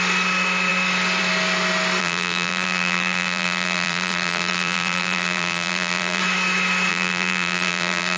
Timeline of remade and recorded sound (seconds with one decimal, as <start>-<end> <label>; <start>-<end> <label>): 0.0-2.0 recorded; 2.0-6.2 remade; 6.2-6.9 recorded; 6.9-8.2 remade